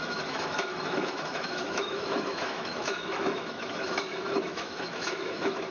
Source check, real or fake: fake